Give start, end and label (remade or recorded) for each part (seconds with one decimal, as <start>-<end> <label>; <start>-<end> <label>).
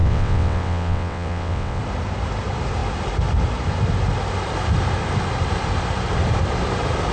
0.0-1.8 remade; 1.8-7.1 recorded